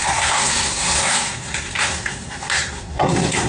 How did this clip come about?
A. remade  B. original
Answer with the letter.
A